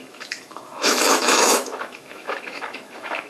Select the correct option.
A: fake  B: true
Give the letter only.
A